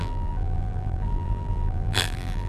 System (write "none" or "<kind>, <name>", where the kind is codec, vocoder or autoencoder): vocoder, BigVGAN v2